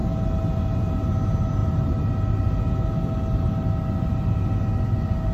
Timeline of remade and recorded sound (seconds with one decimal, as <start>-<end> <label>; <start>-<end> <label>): 0.0-5.3 recorded